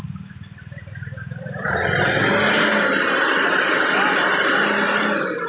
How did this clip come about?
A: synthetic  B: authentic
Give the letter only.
B